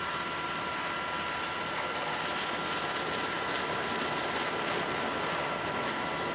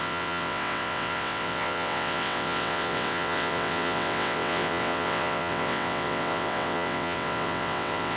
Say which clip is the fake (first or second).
second